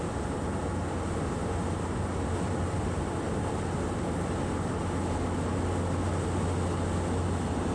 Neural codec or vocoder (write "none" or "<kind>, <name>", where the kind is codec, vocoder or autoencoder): none